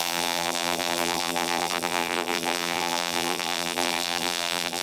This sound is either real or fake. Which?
fake